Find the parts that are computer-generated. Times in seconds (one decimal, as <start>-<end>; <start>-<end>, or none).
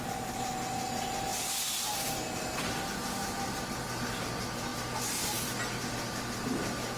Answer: none